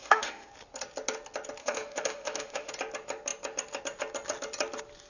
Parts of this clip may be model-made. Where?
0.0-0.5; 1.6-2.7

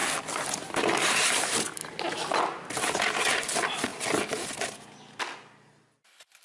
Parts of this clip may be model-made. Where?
none

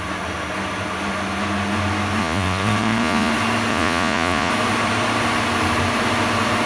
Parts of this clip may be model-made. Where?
2.2-3.3; 3.7-4.5

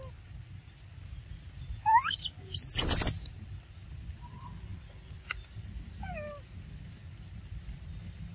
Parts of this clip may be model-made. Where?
none

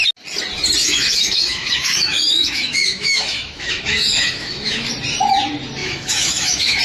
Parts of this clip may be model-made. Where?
0.8-4.9; 5.8-6.8